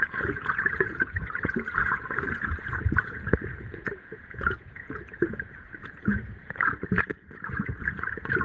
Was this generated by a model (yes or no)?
yes